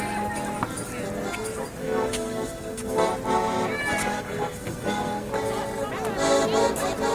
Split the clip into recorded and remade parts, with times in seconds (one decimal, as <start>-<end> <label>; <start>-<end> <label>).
0.0-1.8 recorded; 1.8-3.1 remade; 3.1-4.0 recorded; 4.0-5.3 remade; 5.3-7.1 recorded